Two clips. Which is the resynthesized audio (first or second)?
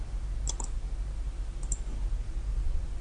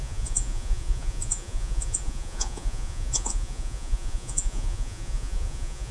second